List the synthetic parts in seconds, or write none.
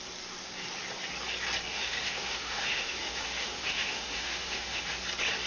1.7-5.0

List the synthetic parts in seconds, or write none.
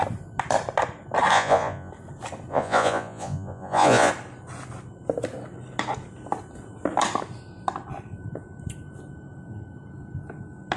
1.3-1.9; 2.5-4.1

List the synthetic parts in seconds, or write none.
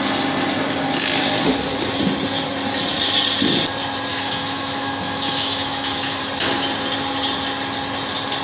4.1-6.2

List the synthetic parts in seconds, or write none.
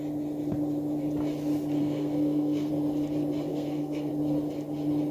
1.8-2.7; 3.5-4.1